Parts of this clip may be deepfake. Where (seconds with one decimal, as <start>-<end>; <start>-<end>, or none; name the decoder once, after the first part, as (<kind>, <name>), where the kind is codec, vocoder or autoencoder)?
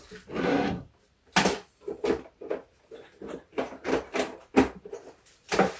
0.4-0.9 (codec, SNAC)